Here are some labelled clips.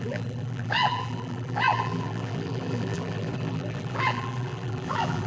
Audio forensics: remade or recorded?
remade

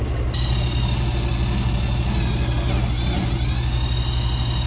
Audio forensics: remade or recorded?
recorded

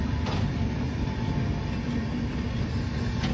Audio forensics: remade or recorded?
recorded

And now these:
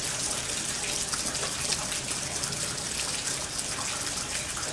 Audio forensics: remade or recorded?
recorded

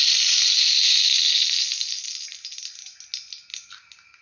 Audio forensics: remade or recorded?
recorded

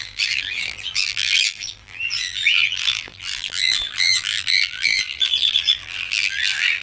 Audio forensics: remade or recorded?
remade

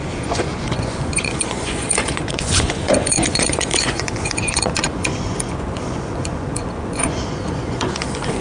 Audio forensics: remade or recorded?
remade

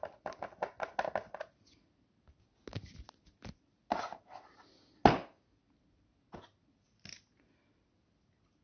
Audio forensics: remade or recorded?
recorded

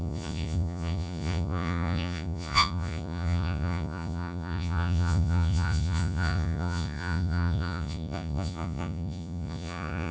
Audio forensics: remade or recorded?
remade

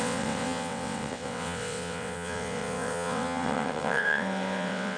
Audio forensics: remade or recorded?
remade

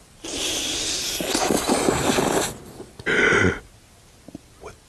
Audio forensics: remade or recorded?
recorded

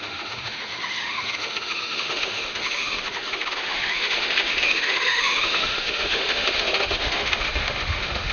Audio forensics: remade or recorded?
remade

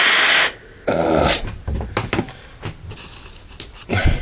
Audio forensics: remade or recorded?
recorded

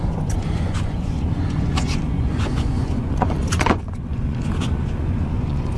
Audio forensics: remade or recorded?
remade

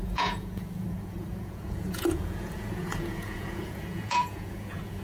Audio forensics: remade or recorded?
remade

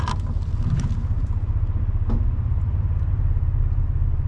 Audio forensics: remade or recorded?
remade